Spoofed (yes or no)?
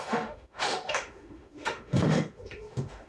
yes